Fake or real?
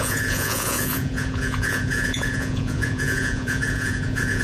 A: fake